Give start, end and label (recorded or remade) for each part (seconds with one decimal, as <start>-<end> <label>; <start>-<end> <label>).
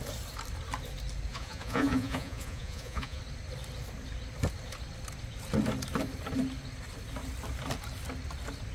0.0-1.3 recorded; 1.3-3.2 remade; 3.2-8.7 recorded